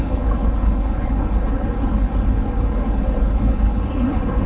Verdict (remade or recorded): remade